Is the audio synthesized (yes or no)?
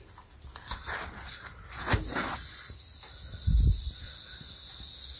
no